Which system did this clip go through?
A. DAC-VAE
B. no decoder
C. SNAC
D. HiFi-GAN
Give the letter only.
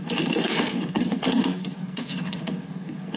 C